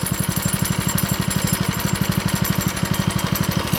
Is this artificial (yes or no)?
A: no